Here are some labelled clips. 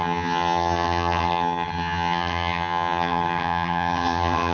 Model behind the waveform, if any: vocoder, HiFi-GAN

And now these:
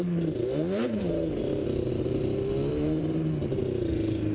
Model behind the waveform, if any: vocoder, BigVGAN v2